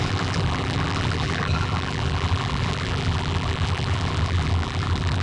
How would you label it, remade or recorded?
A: remade